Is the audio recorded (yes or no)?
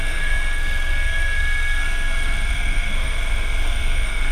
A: no